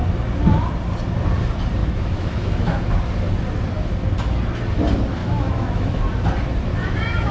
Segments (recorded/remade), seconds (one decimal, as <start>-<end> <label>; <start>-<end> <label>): 0.0-1.8 recorded; 1.8-2.8 remade; 2.8-5.2 recorded; 5.2-6.0 remade; 6.0-6.7 recorded; 6.7-7.3 remade